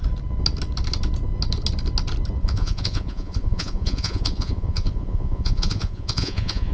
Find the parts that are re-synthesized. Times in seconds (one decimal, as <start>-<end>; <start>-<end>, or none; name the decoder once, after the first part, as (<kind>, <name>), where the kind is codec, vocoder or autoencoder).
2.4-6.7 (vocoder, Vocos)